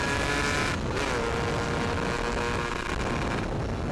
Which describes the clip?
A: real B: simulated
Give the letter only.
A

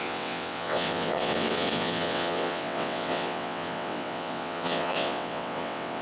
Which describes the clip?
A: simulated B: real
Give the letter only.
A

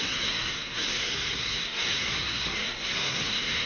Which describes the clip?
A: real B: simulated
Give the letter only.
B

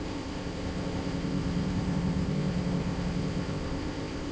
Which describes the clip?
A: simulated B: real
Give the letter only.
A